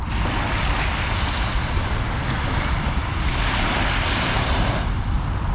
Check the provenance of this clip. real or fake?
real